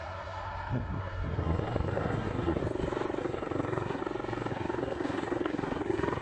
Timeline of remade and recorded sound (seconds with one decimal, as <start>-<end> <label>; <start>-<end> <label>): 0.0-2.6 remade; 2.6-3.2 recorded; 3.2-4.0 remade; 4.0-4.5 recorded; 4.5-6.2 remade